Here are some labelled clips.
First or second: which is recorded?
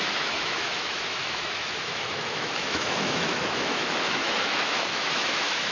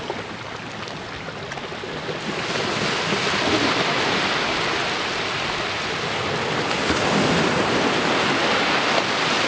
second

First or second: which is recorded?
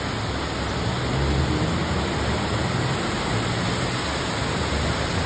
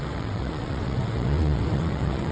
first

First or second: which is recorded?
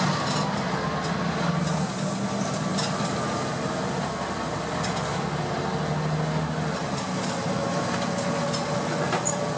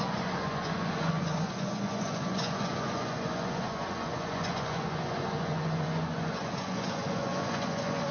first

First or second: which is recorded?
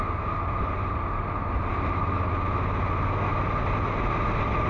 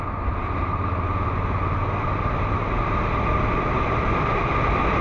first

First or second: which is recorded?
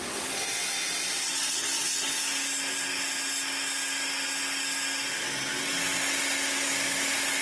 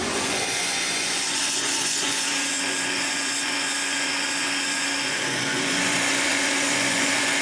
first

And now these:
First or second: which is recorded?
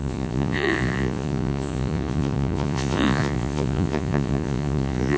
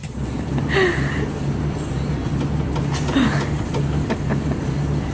second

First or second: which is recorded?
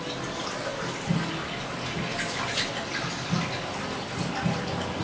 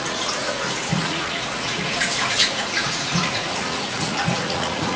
first